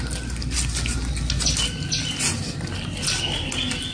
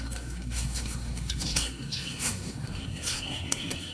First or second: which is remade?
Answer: second